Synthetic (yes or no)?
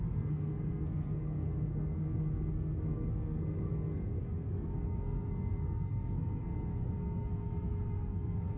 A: yes